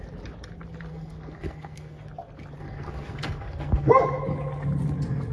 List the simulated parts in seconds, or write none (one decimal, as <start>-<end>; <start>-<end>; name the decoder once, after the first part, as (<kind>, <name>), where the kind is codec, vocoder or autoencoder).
0.9-2.1 (codec, SNAC); 2.6-3.9